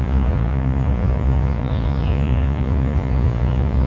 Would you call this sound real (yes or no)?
no